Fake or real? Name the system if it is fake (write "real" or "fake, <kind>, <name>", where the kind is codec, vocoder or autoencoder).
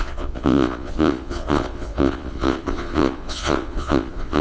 fake, vocoder, Vocos